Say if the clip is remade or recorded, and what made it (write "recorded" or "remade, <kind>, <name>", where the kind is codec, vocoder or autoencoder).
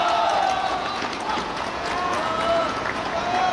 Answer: remade, vocoder, Vocos